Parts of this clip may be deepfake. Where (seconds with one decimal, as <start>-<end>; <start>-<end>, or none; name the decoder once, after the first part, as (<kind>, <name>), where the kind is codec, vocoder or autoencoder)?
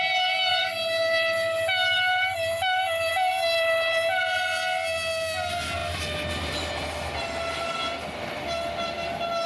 none